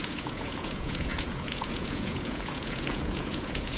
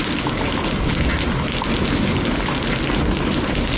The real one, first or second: second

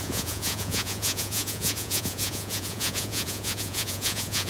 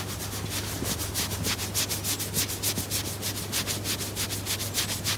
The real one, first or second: second